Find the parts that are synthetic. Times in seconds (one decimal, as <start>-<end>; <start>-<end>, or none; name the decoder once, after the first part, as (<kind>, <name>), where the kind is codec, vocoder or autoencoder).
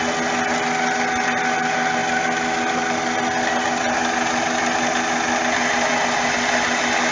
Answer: none